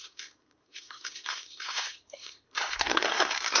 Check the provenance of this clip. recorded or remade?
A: remade